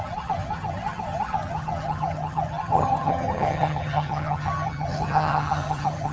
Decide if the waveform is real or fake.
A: fake